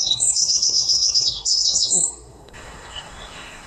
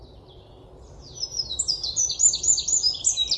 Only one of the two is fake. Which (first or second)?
first